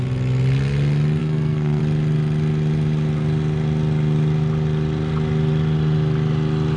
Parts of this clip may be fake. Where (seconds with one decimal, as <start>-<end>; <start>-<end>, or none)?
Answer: 1.2-1.8